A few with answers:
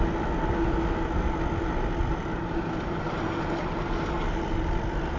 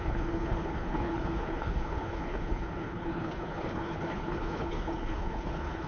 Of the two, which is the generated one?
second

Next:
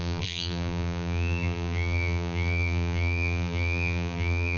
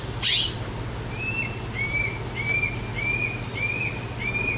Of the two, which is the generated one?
first